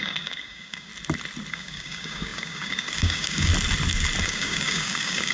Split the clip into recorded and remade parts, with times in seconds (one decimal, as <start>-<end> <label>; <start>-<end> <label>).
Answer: 0.0-0.9 remade; 0.9-1.5 recorded; 1.5-3.5 remade; 3.5-4.2 recorded; 4.2-5.3 remade